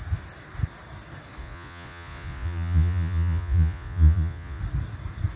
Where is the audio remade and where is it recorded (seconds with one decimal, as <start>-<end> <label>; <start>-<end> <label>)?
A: 0.0-1.4 recorded; 1.4-4.6 remade; 4.6-5.4 recorded